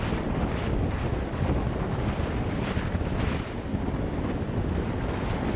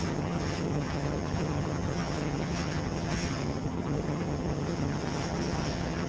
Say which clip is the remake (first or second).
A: second